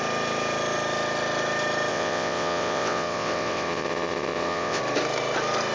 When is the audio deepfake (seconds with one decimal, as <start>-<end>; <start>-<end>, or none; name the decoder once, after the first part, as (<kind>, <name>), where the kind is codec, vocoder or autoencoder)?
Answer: 1.9-4.8 (vocoder, WaveNeXt)